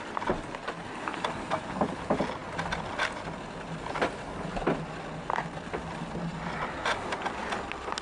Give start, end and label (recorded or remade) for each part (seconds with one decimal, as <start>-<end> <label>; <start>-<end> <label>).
0.0-8.0 recorded